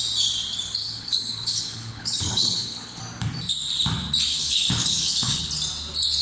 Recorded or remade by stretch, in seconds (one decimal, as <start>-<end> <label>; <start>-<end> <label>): 0.0-0.8 recorded; 0.8-3.0 remade; 3.0-4.3 recorded; 4.3-5.5 remade; 5.5-6.2 recorded